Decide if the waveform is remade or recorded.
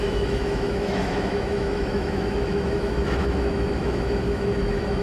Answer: remade